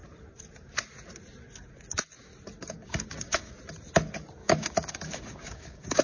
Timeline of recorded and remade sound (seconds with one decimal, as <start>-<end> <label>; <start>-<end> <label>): 0.0-2.6 recorded; 2.6-3.5 remade; 3.5-4.4 recorded; 4.4-6.0 remade